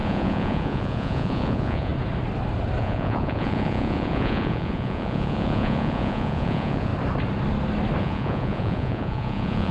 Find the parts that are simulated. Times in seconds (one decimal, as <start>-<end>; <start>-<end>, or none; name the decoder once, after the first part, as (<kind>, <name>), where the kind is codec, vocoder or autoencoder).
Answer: 0.0-1.9 (vocoder, Vocos); 2.8-6.9; 8.0-9.7